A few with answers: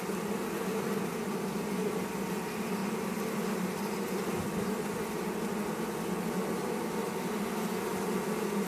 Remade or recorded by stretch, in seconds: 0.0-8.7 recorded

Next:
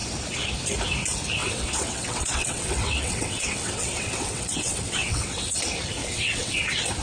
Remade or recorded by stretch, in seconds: 0.0-1.4 recorded; 1.4-5.6 remade; 5.6-6.0 recorded; 6.0-6.6 remade; 6.6-7.0 recorded

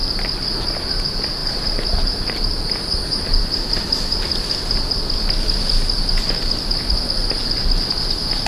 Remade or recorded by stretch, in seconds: 0.0-1.4 recorded; 1.4-2.4 remade; 2.4-3.0 recorded; 3.0-5.1 remade; 5.1-8.5 recorded

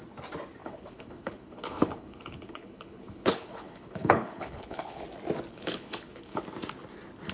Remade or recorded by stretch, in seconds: 0.0-0.6 recorded; 0.6-5.0 remade; 5.0-5.5 recorded; 5.5-6.4 remade; 6.4-7.3 recorded

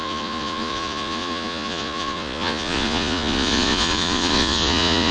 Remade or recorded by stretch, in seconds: 0.0-5.1 remade

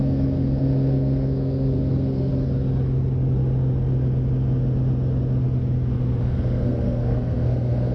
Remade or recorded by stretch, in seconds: 0.0-2.3 remade; 2.3-6.2 recorded; 6.2-7.9 remade